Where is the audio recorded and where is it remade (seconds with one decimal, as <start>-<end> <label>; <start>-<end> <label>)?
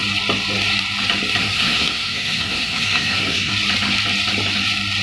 0.0-1.4 recorded; 1.4-3.5 remade; 3.5-5.0 recorded